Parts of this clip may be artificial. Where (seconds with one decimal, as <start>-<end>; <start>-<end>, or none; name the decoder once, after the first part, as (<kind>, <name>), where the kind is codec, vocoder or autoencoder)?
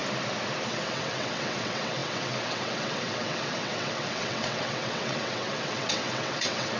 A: 0.7-6.8 (vocoder, WaveNeXt)